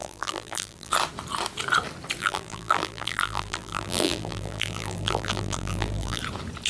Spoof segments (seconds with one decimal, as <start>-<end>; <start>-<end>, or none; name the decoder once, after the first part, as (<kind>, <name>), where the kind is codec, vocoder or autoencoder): 0.0-0.9 (vocoder, BigVGAN v2); 2.2-6.2